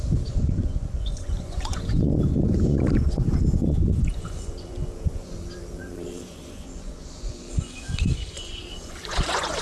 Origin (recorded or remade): remade